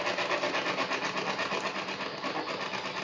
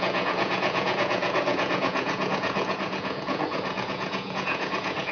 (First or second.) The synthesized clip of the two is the second